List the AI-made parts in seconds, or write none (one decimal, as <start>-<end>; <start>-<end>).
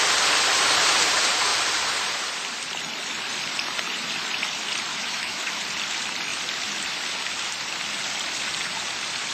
4.9-5.6